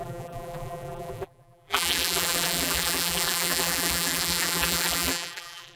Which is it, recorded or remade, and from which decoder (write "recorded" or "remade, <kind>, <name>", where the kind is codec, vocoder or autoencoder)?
remade, vocoder, BigVGAN v2